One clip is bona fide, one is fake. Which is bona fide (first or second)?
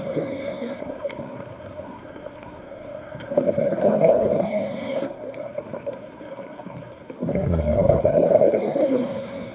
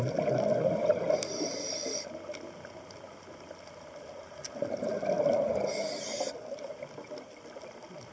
second